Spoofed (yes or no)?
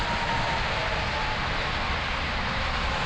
no